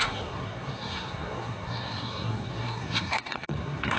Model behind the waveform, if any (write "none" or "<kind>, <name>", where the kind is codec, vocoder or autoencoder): codec, SNAC